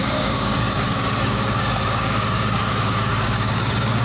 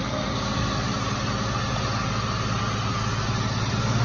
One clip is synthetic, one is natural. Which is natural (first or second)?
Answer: second